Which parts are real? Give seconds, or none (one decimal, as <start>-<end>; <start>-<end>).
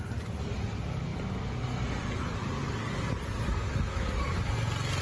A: 0.0-3.5; 4.2-5.0